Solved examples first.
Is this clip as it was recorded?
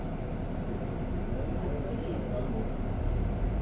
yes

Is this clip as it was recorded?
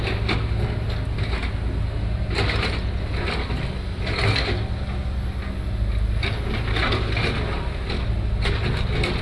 yes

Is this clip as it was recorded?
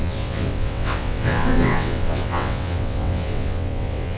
no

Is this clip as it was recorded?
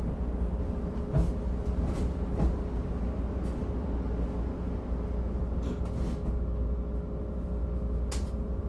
yes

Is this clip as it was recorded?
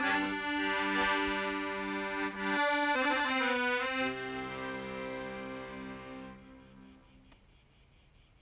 yes